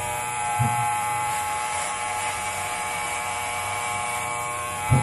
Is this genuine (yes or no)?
no